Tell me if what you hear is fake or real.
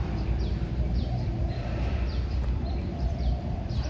fake